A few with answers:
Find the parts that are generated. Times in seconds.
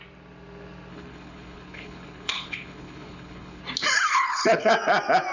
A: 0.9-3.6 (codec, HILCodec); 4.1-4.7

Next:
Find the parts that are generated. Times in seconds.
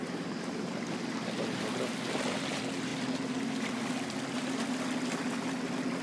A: none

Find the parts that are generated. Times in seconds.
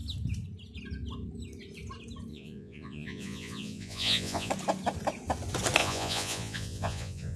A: 2.3-4.5 (vocoder, Vocos); 5.8-7.4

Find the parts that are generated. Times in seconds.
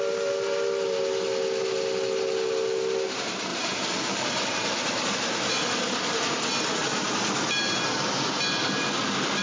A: 3.5-5.1 (vocoder, BigVGAN v2)